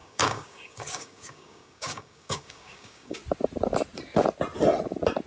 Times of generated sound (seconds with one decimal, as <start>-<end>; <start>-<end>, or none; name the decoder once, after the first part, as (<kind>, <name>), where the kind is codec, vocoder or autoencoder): 0.0-3.2 (codec, DAC)